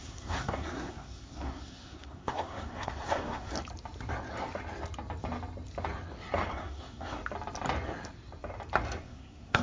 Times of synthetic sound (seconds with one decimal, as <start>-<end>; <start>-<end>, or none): 0.0-3.5; 6.5-7.2; 9.0-9.6